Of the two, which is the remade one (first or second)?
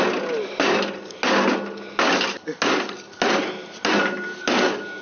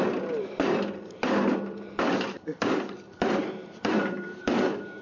second